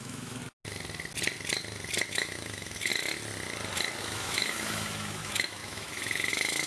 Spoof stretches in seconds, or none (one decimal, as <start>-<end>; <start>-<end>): 0.0-0.4; 2.1-2.9; 4.0-6.7